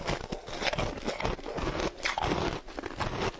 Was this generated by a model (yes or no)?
no